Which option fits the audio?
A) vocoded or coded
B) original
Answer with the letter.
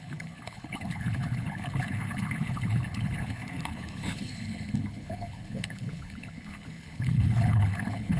A